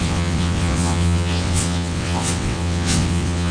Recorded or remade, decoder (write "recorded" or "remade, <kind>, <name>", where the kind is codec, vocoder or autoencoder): remade, vocoder, WaveNeXt